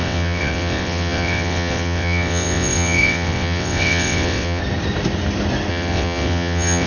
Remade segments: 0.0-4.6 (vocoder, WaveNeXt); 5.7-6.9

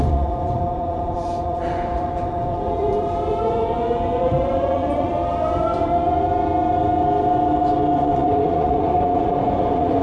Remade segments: 0.0-5.1 (vocoder, Vocos); 7.9-10.0

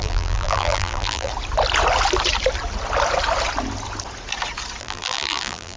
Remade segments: 0.0-1.3 (vocoder, BigVGAN v2); 4.8-5.8